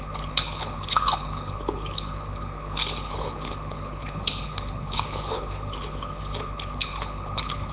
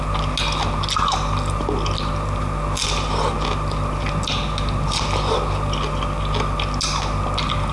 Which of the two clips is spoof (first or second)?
first